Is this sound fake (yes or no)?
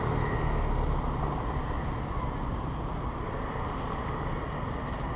no